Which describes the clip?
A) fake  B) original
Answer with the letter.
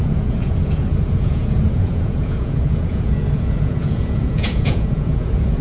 A